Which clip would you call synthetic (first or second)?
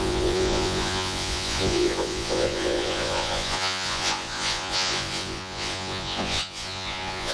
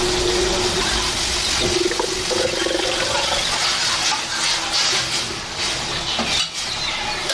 first